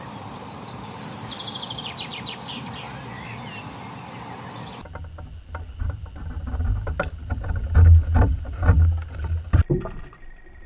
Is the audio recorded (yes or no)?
yes